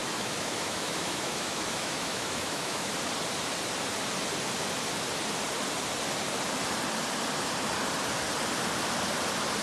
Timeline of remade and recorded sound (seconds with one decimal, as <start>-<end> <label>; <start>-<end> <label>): 0.0-2.9 remade; 2.9-9.6 recorded